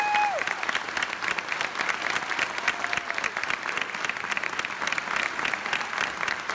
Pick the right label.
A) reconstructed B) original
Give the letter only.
B